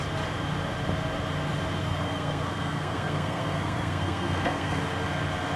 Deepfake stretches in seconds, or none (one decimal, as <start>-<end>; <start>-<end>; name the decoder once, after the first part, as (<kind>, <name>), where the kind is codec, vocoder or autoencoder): 1.8-4.8 (codec, SNAC)